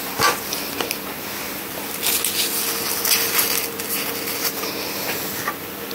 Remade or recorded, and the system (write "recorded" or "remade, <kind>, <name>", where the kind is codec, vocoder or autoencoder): recorded